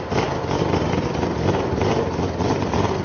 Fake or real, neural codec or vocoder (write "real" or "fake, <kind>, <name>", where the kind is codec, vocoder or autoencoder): fake, vocoder, BigVGAN v2